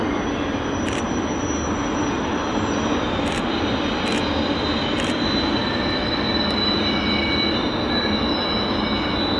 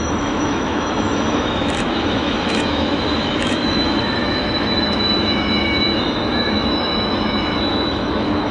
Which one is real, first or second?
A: first